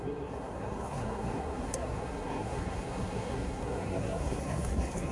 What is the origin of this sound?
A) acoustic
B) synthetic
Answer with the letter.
B